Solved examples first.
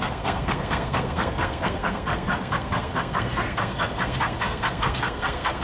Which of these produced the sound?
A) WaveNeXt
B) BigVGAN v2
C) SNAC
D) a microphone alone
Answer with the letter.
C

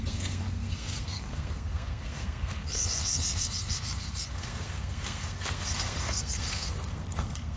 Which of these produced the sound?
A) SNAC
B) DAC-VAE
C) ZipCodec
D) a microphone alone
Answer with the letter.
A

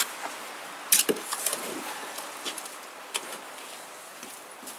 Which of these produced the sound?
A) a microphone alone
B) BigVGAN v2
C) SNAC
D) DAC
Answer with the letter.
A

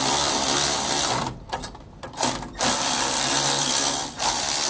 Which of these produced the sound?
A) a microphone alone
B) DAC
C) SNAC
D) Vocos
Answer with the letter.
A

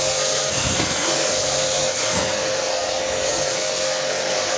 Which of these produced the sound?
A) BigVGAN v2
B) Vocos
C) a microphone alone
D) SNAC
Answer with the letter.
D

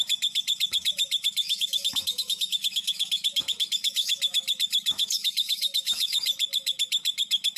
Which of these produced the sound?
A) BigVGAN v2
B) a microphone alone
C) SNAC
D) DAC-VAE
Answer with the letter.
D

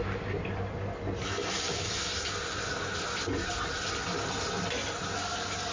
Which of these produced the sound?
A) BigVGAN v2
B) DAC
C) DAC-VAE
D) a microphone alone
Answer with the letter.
D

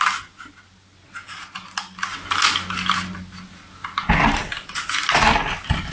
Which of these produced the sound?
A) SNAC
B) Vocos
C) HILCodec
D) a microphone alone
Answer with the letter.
D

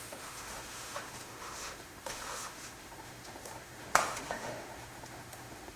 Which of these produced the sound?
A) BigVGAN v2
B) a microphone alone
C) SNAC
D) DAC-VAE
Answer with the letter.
D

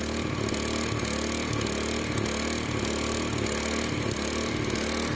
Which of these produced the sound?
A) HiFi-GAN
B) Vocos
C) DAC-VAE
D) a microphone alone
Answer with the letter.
D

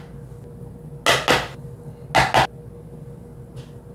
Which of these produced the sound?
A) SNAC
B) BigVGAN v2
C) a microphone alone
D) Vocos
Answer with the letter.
C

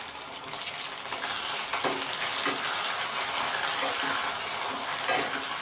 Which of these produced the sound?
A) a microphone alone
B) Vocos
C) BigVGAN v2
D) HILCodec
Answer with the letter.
A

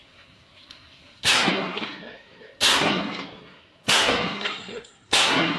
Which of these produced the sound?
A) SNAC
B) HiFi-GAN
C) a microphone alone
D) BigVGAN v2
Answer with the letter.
A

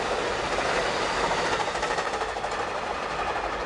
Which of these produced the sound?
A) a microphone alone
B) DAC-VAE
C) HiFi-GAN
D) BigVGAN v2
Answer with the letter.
A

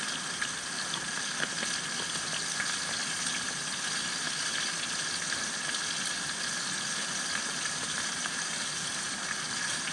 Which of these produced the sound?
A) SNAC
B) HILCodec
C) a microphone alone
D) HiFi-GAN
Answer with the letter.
C